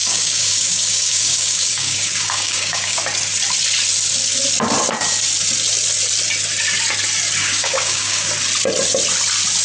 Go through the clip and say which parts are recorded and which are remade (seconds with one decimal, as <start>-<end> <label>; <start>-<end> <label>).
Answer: 0.0-3.0 remade; 3.0-7.4 recorded; 7.4-8.3 remade; 8.3-9.6 recorded